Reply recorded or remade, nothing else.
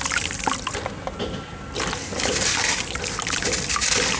recorded